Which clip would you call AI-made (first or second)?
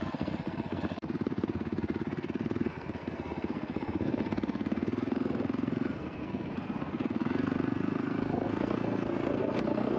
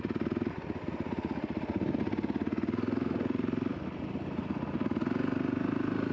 first